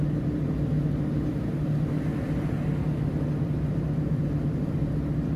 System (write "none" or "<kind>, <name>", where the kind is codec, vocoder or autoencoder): none